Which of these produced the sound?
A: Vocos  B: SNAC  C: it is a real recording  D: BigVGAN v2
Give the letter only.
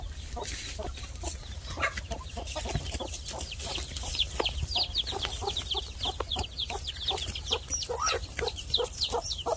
D